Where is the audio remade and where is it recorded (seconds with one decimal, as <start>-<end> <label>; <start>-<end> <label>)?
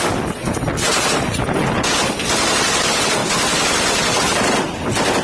0.0-5.2 recorded